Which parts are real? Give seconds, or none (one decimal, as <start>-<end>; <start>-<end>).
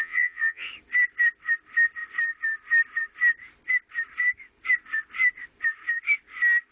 0.7-6.7